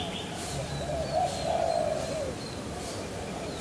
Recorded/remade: remade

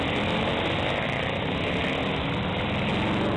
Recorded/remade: recorded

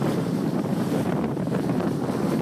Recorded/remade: remade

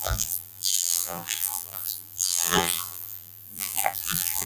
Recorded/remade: remade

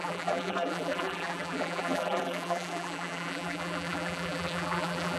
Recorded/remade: remade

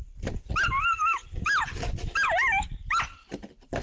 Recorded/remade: recorded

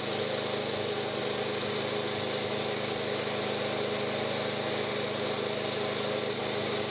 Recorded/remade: recorded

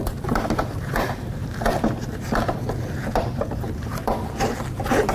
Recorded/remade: remade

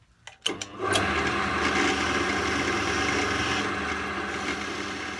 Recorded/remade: recorded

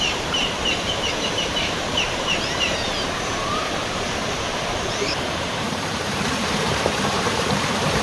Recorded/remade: remade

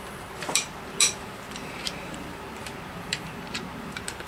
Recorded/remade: remade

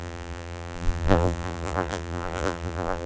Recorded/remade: remade